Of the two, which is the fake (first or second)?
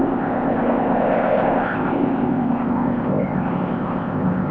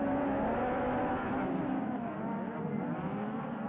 first